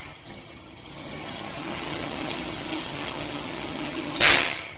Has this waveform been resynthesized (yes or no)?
yes